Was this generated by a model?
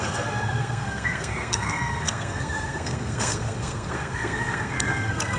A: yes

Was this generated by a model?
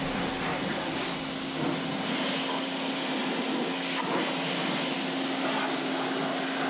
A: no